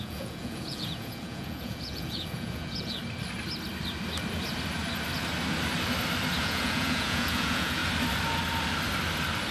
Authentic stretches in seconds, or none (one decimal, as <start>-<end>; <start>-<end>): 3.0-6.4; 7.8-9.5